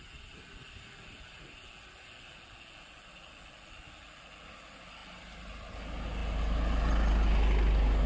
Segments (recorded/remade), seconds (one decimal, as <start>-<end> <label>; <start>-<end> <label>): 0.0-5.0 recorded; 5.0-5.7 remade; 5.7-8.1 recorded